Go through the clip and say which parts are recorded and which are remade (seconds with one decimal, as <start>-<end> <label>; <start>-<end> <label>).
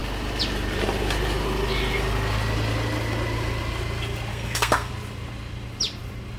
0.0-4.3 recorded; 4.3-4.9 remade; 4.9-6.4 recorded